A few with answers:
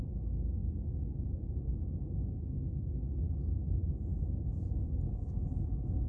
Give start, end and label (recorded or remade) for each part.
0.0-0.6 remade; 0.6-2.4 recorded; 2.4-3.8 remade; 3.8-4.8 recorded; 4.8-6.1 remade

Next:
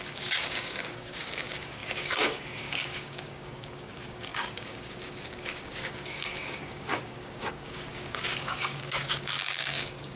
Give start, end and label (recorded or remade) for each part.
0.0-10.2 remade

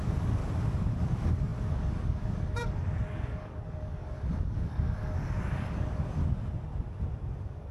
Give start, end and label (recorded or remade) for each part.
0.0-0.4 remade; 0.4-1.0 recorded; 1.0-6.2 remade; 6.2-7.3 recorded; 7.3-7.7 remade

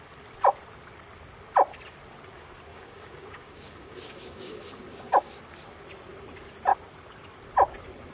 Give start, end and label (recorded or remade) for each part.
0.0-2.7 recorded; 2.7-5.4 remade; 5.4-8.1 recorded

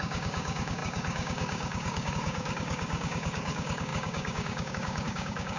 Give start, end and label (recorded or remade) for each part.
0.0-5.6 remade